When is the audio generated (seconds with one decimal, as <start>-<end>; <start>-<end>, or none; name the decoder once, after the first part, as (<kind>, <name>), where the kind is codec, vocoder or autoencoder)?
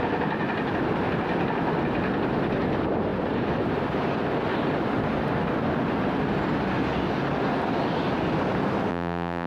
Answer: 8.9-9.5 (vocoder, BigVGAN v2)